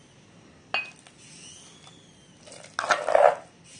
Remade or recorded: recorded